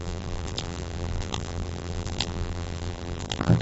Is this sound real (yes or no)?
no